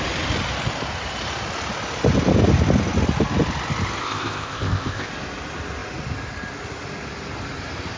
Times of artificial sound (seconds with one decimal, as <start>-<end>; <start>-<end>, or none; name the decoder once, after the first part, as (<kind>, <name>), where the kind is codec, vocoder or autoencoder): 4.0-5.1 (codec, ZipCodec)